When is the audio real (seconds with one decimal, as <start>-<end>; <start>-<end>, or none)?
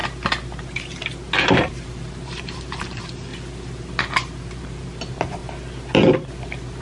0.0-1.6; 3.3-4.6; 5.4-6.8